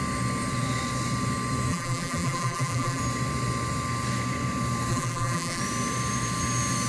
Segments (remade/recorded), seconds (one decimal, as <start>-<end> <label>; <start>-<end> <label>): 0.0-1.7 recorded; 1.7-3.0 remade; 3.0-4.9 recorded; 4.9-5.6 remade; 5.6-6.9 recorded